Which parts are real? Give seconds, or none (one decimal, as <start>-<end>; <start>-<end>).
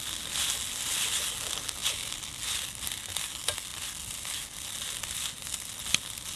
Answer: 0.0-6.4